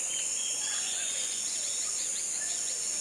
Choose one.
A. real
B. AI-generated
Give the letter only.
B